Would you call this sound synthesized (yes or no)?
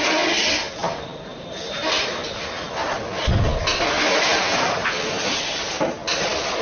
no